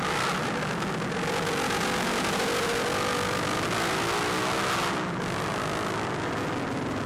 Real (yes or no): yes